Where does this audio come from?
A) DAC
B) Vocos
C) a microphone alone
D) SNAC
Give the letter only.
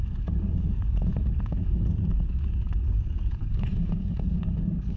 A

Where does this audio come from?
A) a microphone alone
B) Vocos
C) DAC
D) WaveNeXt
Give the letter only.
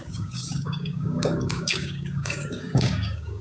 C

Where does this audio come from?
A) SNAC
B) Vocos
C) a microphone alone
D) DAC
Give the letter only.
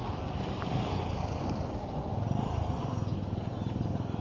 C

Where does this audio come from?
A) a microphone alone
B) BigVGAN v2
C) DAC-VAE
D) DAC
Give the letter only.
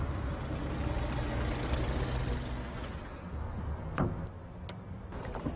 A